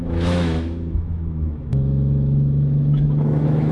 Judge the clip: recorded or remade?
remade